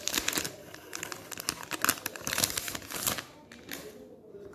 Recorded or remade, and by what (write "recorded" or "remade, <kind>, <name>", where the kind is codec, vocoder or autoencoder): recorded